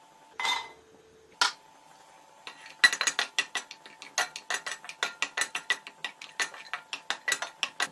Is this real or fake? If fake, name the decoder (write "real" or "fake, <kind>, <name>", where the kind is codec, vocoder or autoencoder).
real